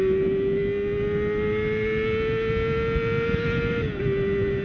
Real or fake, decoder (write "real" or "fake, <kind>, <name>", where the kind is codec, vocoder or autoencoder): real